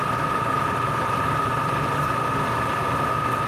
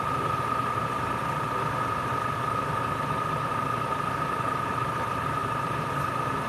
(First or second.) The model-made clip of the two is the second